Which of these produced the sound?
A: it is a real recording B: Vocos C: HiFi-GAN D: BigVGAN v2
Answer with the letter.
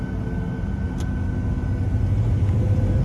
A